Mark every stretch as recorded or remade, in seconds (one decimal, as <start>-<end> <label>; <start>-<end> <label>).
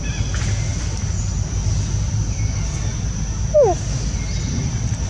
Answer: 0.0-5.1 recorded